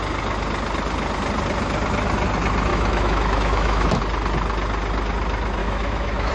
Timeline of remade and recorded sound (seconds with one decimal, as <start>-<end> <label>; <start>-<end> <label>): 0.0-2.7 recorded; 2.7-4.0 remade; 4.0-5.6 recorded; 5.6-6.3 remade